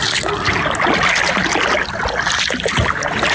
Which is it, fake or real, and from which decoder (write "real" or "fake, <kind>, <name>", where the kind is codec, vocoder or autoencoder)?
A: real